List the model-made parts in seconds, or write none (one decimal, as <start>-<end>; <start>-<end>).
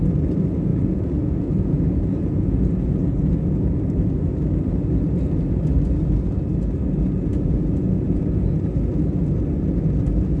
0.7-3.7; 7.3-8.4